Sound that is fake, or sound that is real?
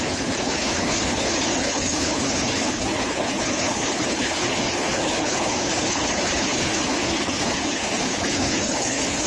fake